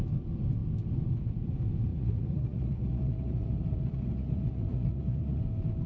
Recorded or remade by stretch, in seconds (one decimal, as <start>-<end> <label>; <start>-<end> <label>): 0.0-1.9 recorded; 1.9-5.4 remade; 5.4-5.9 recorded